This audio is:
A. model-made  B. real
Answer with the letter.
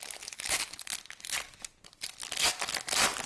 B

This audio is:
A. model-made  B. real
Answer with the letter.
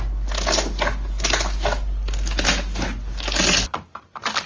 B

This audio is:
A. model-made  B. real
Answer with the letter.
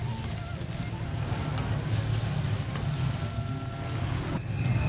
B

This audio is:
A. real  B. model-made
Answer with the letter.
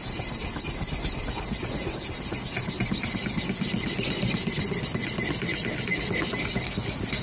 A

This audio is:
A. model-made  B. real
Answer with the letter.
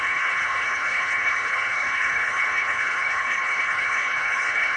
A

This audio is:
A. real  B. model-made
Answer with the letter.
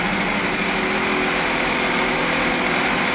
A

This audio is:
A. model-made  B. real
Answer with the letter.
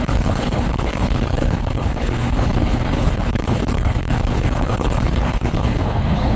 A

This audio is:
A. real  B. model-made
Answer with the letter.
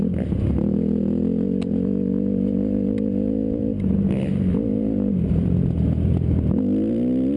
A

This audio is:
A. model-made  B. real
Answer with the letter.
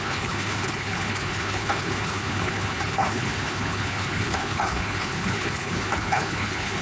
A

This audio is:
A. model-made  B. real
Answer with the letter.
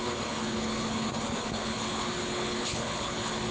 A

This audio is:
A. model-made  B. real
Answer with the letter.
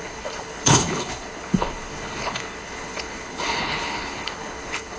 A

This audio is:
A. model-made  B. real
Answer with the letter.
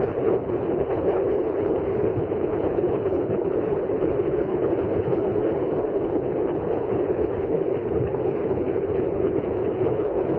A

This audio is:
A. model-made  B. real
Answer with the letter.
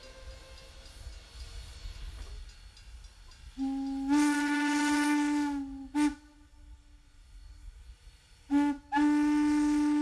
B